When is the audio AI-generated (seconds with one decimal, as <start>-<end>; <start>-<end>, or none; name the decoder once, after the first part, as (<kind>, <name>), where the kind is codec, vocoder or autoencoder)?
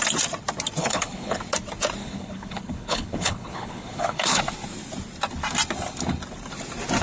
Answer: 0.8-1.4 (codec, HILCodec); 2.0-4.4